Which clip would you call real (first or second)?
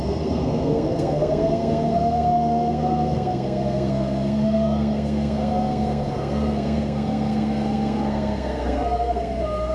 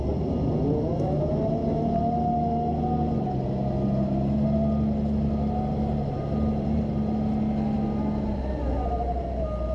second